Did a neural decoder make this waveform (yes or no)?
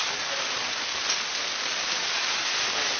no